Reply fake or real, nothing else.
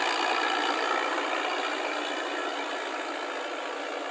real